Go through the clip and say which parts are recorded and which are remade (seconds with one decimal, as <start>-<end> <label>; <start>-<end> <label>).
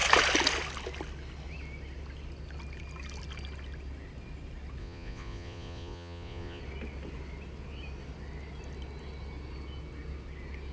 0.0-4.8 recorded; 4.8-6.6 remade; 6.6-10.7 recorded